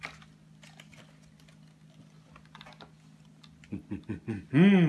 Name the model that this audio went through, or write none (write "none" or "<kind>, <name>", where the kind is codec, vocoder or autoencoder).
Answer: none